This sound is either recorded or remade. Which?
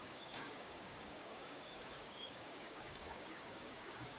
remade